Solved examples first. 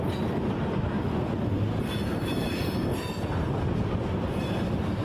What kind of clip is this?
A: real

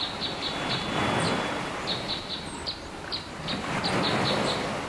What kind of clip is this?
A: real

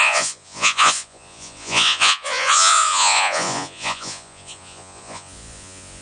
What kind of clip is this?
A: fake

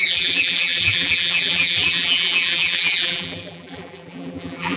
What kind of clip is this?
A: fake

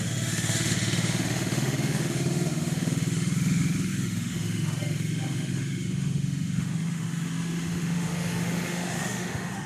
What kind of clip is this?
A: fake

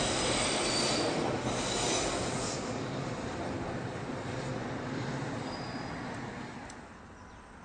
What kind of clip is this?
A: real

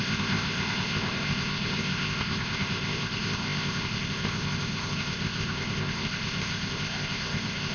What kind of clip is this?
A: fake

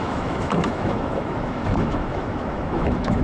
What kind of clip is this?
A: fake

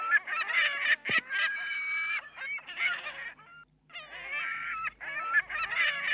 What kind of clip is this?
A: real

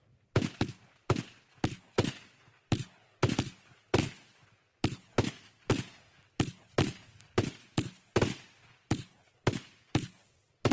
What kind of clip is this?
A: real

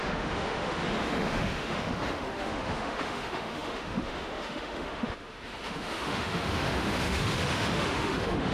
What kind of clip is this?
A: fake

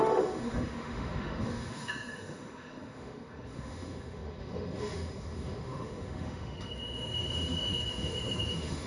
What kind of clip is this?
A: fake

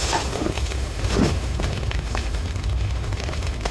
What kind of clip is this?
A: fake